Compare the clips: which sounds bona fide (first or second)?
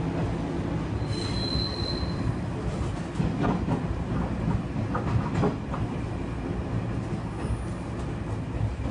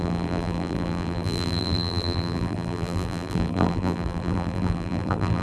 first